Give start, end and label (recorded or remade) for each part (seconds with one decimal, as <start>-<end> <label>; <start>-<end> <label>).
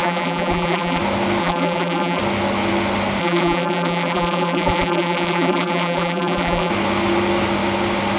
0.0-1.0 remade; 1.0-1.4 recorded; 1.4-2.2 remade; 2.2-3.2 recorded; 3.2-6.7 remade; 6.7-8.2 recorded